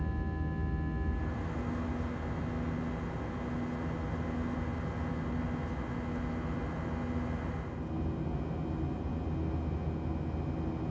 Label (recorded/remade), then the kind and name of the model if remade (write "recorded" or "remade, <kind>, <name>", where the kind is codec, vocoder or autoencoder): recorded